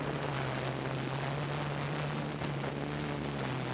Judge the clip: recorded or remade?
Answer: recorded